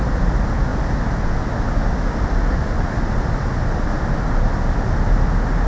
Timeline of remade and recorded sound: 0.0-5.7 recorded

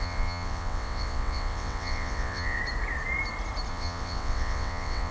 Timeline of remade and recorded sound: 0.0-2.6 remade; 2.6-3.7 recorded; 3.7-5.1 remade